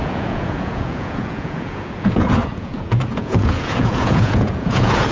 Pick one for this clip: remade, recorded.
remade